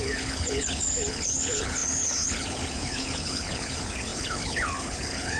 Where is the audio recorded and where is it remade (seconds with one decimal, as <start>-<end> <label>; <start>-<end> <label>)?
0.0-5.4 remade